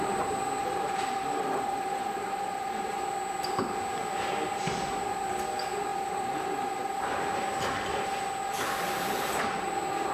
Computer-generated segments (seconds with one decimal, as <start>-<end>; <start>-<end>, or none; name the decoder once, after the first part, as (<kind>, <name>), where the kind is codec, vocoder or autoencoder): 0.6-3.0 (vocoder, BigVGAN v2); 5.9-7.2